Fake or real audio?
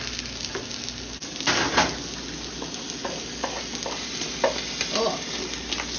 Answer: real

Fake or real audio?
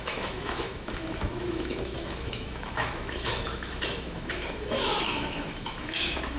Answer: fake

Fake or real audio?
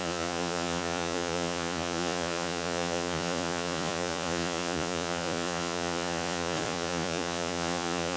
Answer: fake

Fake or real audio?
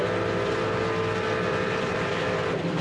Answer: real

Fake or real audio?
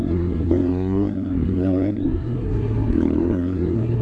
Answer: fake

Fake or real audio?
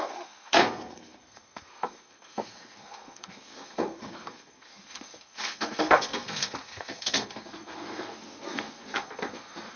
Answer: fake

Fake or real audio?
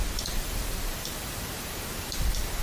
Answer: fake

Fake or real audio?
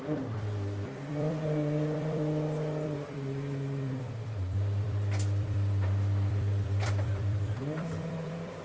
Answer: fake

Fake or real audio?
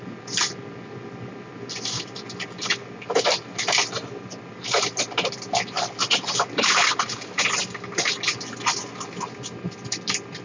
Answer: real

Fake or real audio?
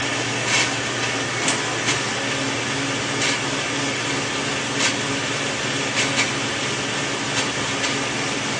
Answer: real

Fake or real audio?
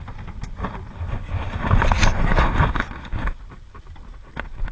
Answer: real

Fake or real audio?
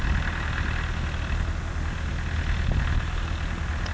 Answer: real